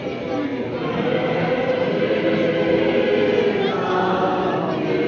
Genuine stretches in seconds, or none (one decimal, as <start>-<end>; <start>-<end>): 0.0-5.1

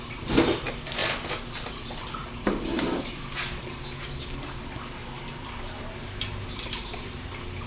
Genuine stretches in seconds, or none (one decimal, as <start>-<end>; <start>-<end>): 0.0-7.7

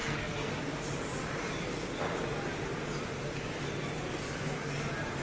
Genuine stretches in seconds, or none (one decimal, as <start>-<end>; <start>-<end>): 0.5-5.2

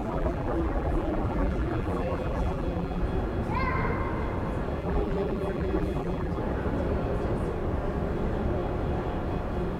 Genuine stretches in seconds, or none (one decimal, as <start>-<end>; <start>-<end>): 3.0-4.8; 6.4-9.8

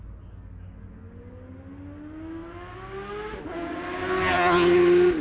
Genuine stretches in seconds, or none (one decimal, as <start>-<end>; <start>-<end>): 0.0-5.2